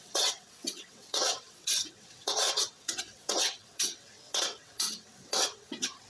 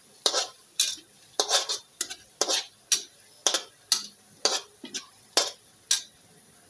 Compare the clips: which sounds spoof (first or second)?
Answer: first